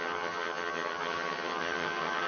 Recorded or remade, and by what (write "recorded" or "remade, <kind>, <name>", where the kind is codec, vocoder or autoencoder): remade, vocoder, HiFi-GAN